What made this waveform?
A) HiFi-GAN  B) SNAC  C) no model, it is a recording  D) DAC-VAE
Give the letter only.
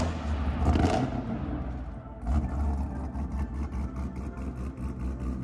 C